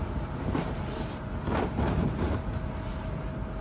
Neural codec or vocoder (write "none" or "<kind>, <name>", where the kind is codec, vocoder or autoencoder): none